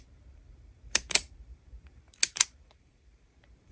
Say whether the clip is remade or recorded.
remade